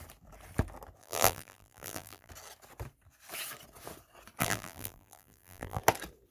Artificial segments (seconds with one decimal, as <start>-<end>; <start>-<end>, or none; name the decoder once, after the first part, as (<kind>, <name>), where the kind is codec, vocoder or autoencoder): 1.0-2.3 (vocoder, BigVGAN v2); 4.4-5.8